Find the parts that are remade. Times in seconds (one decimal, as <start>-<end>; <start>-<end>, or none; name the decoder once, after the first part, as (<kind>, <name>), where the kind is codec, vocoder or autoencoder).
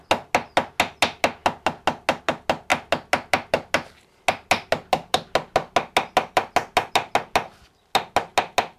none